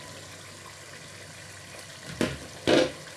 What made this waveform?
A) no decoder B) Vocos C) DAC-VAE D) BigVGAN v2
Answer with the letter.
A